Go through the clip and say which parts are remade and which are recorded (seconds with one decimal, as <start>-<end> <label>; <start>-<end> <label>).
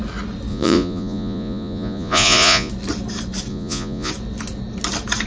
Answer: 0.0-0.5 recorded; 0.5-2.7 remade; 2.7-3.5 recorded; 3.5-4.1 remade; 4.1-5.3 recorded